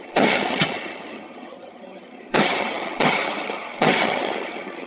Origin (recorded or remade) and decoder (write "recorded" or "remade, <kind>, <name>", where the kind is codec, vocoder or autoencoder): remade, vocoder, HiFi-GAN